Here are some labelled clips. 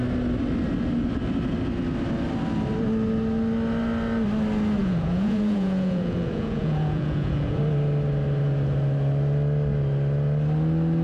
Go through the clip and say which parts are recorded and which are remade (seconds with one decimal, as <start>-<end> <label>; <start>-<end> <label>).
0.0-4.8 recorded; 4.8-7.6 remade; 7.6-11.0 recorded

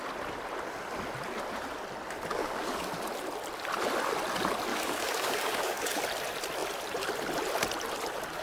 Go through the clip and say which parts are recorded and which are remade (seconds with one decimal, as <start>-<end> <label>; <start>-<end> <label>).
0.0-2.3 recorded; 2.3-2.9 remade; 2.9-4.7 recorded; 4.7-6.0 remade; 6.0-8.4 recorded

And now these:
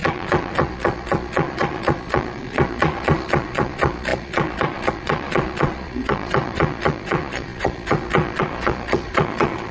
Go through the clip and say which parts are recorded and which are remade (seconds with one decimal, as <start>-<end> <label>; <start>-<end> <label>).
0.0-9.7 remade

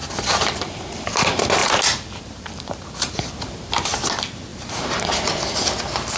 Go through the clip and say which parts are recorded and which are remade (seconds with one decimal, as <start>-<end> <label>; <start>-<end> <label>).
0.0-0.9 remade; 0.9-1.6 recorded; 1.6-3.7 remade; 3.7-4.5 recorded; 4.5-5.0 remade; 5.0-6.2 recorded

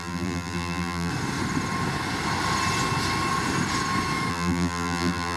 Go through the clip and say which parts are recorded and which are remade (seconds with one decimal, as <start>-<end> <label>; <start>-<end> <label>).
0.0-1.1 remade; 1.1-4.3 recorded; 4.3-5.4 remade

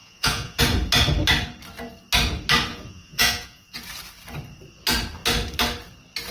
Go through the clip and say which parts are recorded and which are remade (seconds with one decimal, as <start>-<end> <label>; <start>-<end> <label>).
0.0-0.6 remade; 0.6-2.7 recorded; 2.7-3.8 remade; 3.8-6.3 recorded

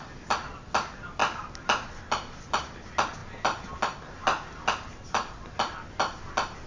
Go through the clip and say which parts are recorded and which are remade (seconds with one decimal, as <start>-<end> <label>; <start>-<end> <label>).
0.0-6.7 recorded

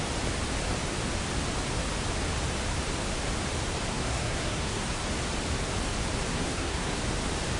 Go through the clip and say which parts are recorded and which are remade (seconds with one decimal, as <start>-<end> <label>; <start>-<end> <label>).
0.0-3.9 recorded; 3.9-5.0 remade; 5.0-6.3 recorded; 6.3-7.0 remade; 7.0-7.6 recorded